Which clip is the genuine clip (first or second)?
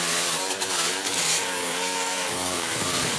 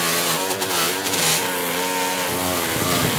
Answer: second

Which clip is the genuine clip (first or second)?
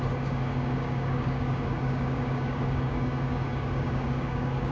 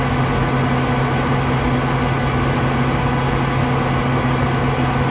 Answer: second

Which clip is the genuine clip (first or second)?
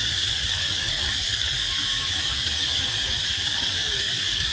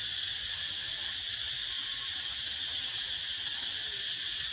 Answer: second